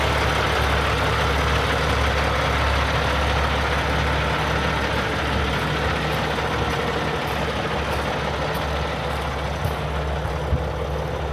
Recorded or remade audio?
recorded